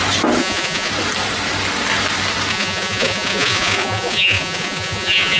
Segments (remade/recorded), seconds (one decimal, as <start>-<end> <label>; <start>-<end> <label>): 0.0-0.4 recorded; 0.4-0.9 remade; 0.9-2.5 recorded; 2.5-5.4 remade